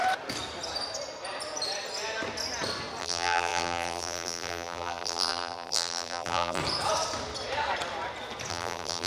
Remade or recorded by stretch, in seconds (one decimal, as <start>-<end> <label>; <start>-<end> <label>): 0.0-3.0 recorded; 3.0-6.6 remade; 6.6-8.5 recorded; 8.5-9.1 remade

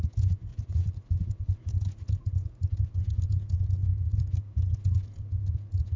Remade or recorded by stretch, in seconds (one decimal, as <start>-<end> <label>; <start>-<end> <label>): 0.0-0.5 recorded; 0.5-1.3 remade; 1.3-3.8 recorded; 3.8-4.6 remade; 4.6-6.0 recorded

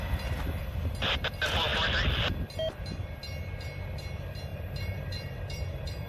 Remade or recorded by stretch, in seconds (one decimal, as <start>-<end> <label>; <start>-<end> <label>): 0.0-4.5 recorded; 4.5-6.1 remade

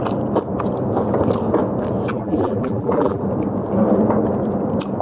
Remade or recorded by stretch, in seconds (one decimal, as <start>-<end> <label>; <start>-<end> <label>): 0.0-2.1 recorded; 2.1-3.2 remade; 3.2-5.0 recorded

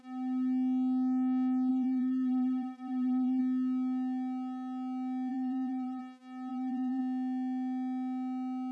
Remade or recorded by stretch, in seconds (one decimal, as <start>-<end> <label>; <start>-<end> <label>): 0.0-1.7 recorded; 1.7-3.4 remade; 3.4-5.3 recorded; 5.3-6.0 remade; 6.0-6.5 recorded; 6.5-7.0 remade; 7.0-8.7 recorded

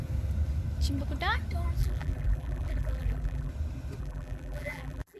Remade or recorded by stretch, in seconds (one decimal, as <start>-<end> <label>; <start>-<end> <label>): 0.0-1.8 recorded; 1.8-3.5 remade; 3.5-4.0 recorded; 4.0-5.2 remade

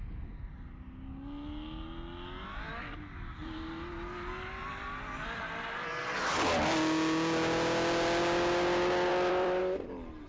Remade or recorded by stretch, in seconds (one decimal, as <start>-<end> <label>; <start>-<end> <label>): 0.0-4.6 recorded; 4.6-5.4 remade; 5.4-9.1 recorded; 9.1-9.6 remade; 9.6-10.3 recorded